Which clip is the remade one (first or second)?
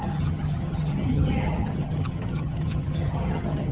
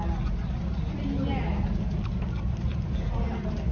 first